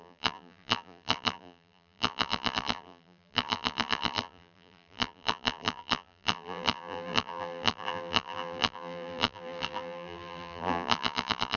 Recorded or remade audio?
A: remade